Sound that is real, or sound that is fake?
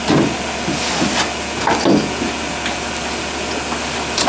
real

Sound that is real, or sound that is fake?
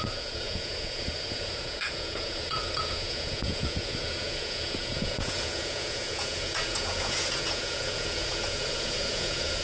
fake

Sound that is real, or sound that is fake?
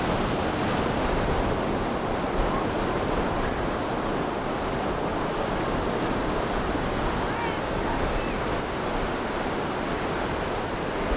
real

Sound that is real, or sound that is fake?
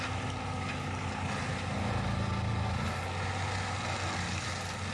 real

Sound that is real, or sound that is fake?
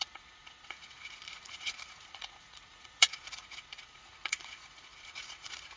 fake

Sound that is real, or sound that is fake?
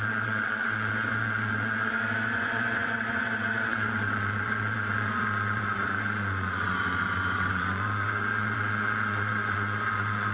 fake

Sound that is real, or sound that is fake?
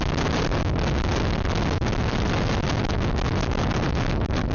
real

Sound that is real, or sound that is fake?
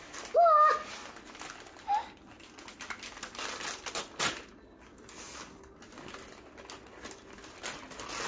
real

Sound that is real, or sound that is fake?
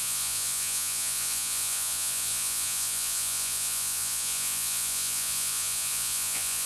fake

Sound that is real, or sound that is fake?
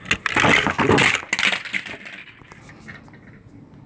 real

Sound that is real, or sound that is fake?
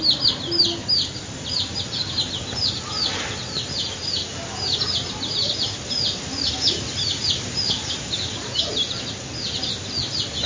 real